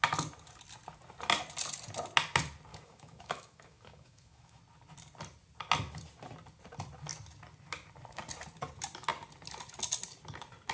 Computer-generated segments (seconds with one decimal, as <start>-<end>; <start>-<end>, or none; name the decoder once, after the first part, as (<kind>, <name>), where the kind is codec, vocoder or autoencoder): 2.7-4.6 (autoencoder, DAC-VAE)